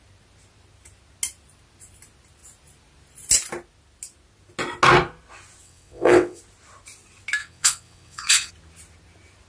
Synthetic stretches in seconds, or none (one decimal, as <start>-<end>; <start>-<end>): 5.6-6.4; 7.4-8.5